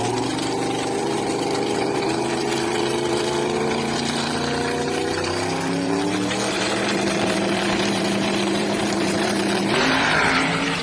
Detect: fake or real fake